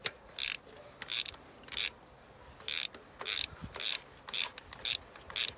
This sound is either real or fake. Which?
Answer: real